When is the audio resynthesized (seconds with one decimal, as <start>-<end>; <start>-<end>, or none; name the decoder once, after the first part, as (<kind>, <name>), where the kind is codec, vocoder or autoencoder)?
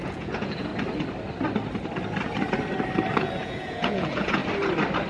0.0-0.7 (vocoder, Vocos); 3.2-4.4